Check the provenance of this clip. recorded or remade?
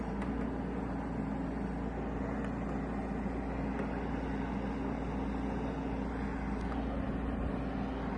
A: recorded